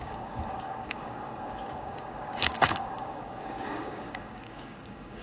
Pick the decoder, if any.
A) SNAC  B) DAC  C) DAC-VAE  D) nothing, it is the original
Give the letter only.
B